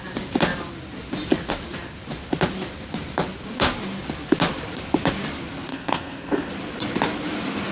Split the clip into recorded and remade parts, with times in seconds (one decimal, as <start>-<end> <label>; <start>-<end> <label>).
0.0-5.7 recorded; 5.7-6.5 remade; 6.5-7.7 recorded